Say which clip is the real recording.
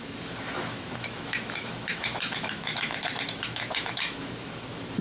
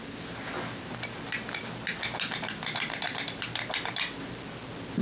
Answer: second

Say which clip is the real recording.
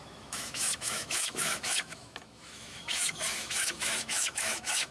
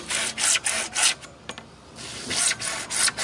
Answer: second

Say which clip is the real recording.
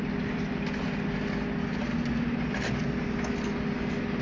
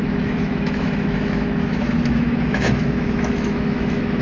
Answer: first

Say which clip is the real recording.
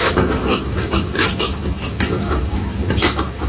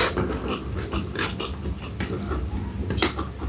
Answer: second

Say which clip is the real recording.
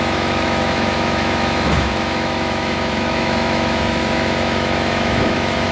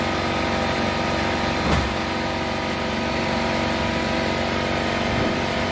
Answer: second